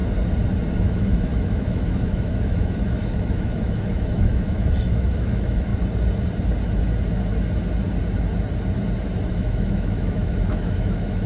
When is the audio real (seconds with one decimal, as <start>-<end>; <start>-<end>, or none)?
0.0-0.8; 5.7-9.3